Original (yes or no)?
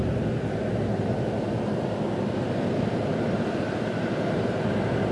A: yes